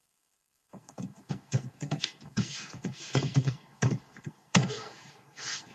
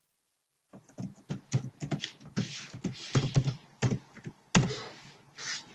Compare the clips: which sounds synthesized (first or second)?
first